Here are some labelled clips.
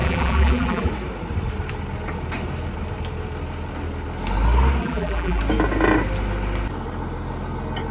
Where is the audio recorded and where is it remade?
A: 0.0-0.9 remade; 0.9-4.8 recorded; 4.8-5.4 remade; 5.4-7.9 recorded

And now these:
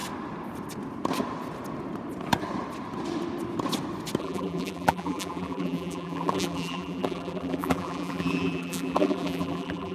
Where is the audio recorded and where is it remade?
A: 0.0-4.2 recorded; 4.2-9.9 remade

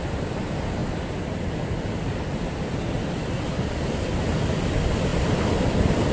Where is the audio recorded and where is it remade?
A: 0.0-0.8 remade; 0.8-3.4 recorded; 3.4-6.1 remade

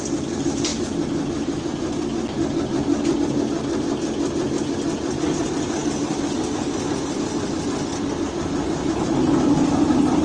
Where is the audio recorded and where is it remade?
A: 0.0-10.2 recorded

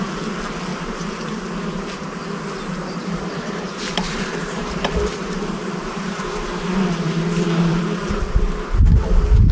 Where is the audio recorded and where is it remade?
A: 0.0-0.7 recorded; 0.7-2.2 remade; 2.2-3.0 recorded; 3.0-8.2 remade; 8.2-9.5 recorded

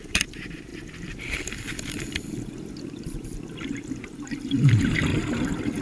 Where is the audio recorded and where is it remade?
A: 0.0-5.1 remade; 5.1-5.8 recorded

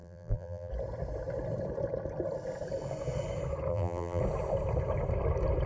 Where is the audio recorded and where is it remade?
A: 0.0-0.7 remade; 0.7-3.7 recorded; 3.7-4.2 remade; 4.2-5.7 recorded